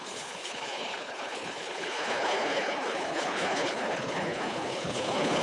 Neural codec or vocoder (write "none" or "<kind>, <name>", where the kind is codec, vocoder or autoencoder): codec, HILCodec